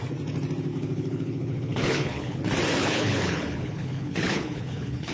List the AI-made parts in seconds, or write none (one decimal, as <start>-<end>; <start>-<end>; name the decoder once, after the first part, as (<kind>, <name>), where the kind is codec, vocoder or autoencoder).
0.7-2.4 (codec, HILCodec); 2.8-5.1